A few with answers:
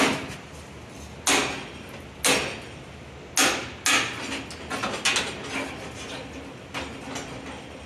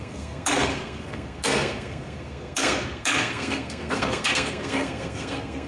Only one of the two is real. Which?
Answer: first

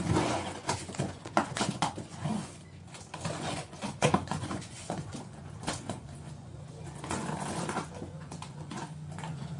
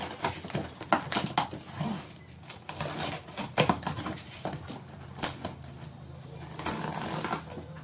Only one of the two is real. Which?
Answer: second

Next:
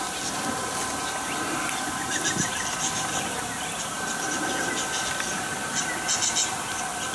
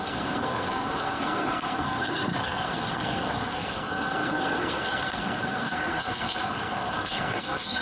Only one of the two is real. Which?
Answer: first